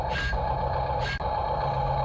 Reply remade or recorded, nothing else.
recorded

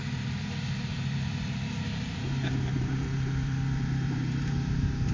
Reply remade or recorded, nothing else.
remade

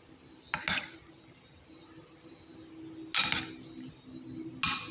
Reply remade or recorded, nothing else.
recorded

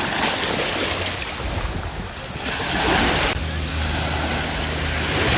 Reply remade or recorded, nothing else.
recorded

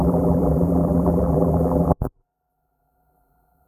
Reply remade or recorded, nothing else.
remade